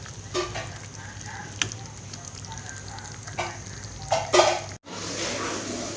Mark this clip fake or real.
real